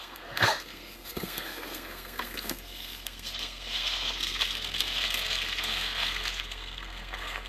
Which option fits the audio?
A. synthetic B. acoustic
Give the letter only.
A